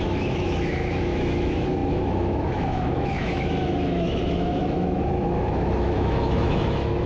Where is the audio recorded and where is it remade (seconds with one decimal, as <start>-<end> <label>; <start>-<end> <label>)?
0.0-7.1 remade